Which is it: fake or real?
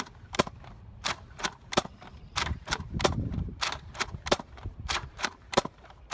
fake